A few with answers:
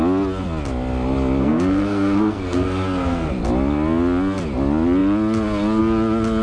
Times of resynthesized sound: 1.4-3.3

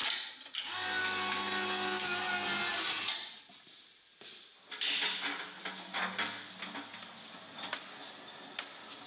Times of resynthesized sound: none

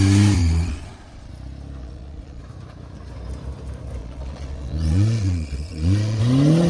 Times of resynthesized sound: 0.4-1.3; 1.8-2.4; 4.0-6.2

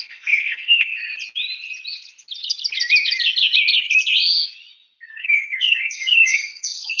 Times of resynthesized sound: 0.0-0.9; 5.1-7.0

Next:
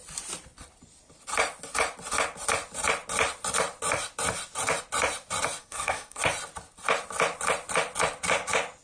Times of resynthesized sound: 5.6-6.2

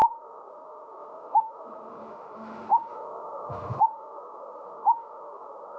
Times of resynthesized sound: 0.0-5.8

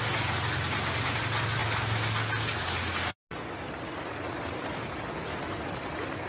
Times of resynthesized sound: none

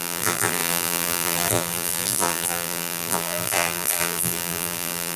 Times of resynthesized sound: 0.0-5.2